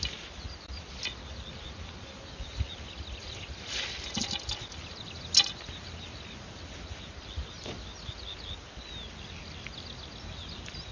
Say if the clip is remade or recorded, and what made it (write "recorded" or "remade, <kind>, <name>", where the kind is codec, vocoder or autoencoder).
recorded